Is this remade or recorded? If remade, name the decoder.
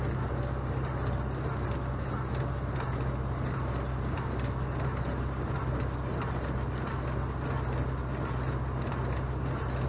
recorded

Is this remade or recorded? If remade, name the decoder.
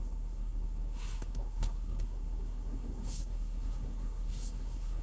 remade, codec, SNAC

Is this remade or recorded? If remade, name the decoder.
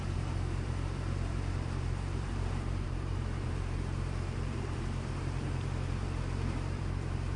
remade, vocoder, BigVGAN v2